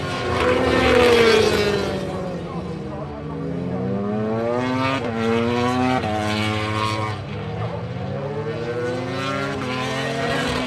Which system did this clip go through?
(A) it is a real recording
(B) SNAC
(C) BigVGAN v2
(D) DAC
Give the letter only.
A